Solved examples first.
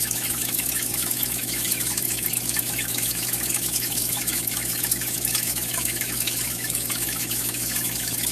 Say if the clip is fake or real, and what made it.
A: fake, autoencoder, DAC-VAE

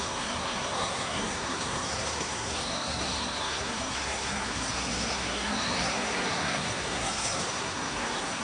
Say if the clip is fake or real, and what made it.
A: fake, codec, SNAC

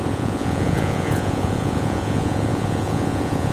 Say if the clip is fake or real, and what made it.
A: fake, vocoder, Vocos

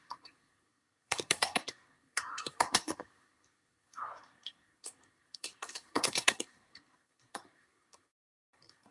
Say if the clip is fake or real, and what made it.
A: fake, codec, SNAC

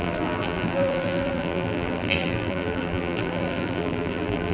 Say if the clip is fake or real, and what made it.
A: fake, vocoder, BigVGAN v2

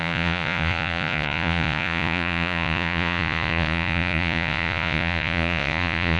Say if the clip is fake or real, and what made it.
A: fake, vocoder, Vocos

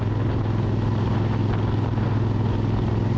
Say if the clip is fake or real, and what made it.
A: real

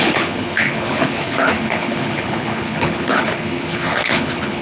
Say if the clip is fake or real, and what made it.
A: fake, codec, HILCodec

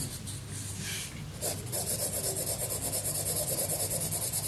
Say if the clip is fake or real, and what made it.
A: real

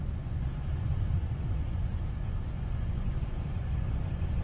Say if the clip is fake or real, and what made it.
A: fake, vocoder, Vocos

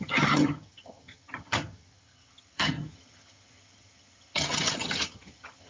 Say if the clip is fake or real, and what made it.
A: fake, vocoder, HiFi-GAN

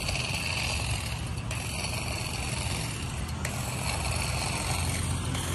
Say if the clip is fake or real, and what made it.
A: real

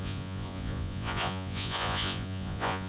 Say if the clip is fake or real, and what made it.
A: fake, vocoder, Vocos